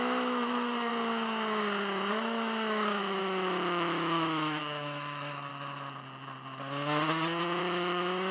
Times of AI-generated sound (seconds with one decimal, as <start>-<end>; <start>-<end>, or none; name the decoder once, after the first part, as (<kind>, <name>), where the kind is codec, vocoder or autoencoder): 0.0-0.9 (autoencoder, DAC-VAE); 2.1-5.5; 7.6-8.3

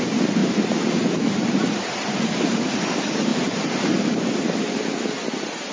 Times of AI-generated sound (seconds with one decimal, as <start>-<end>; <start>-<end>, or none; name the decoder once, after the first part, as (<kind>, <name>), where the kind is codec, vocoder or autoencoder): 0.4-2.6 (vocoder, BigVGAN v2); 3.3-4.8